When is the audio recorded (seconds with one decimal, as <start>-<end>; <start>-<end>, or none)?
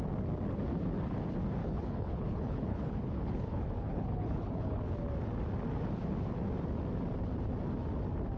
0.0-1.6; 4.9-8.4